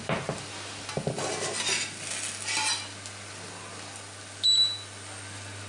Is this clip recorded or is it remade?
recorded